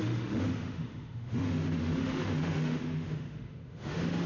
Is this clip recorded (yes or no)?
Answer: no